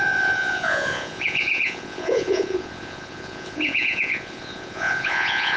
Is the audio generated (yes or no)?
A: yes